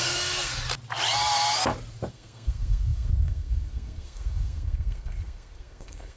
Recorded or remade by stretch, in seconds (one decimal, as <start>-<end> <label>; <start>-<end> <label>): 0.0-0.5 remade; 0.5-2.1 recorded; 2.1-6.2 remade